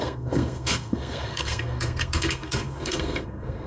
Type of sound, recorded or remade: remade